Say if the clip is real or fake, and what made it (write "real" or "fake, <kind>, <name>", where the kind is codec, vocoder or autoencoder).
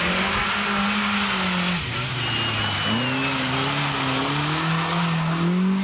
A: real